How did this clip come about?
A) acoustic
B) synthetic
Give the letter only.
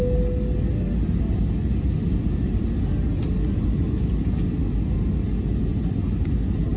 A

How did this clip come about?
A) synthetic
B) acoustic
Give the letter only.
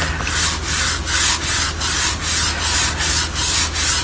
B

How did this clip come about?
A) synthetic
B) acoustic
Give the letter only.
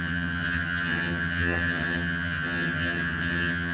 A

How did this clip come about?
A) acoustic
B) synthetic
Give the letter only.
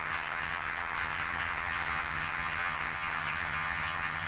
B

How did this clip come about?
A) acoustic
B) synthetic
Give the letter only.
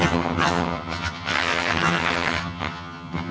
B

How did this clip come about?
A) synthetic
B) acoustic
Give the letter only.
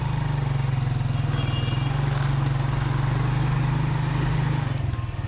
B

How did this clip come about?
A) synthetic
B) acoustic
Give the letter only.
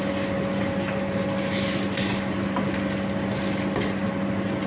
B